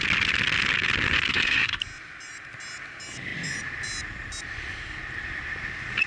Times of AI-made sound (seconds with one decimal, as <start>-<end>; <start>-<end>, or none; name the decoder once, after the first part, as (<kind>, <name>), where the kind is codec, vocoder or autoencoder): 1.3-1.8 (codec, SNAC)